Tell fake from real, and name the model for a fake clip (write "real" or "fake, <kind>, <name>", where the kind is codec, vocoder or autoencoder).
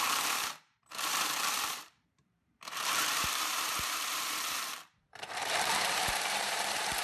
fake, vocoder, BigVGAN v2